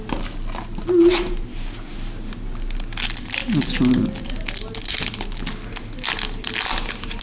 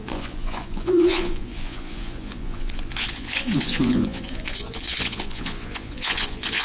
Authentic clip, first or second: first